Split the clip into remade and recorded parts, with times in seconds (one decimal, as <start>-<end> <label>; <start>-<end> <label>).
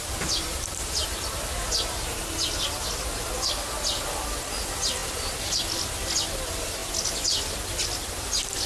0.0-1.0 remade; 1.0-3.8 recorded; 3.8-6.8 remade; 6.8-8.7 recorded